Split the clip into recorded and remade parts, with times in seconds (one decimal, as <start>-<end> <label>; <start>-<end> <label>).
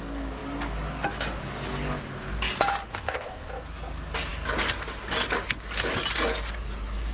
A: 0.0-2.9 recorded; 2.9-3.5 remade; 3.5-7.1 recorded